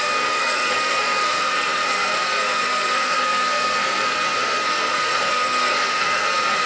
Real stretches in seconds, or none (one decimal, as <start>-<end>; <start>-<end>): none